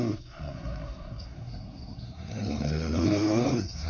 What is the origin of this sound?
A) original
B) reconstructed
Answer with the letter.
B